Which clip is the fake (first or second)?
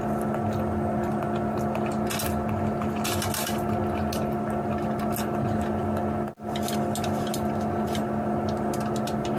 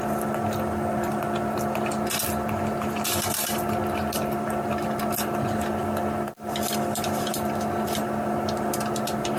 second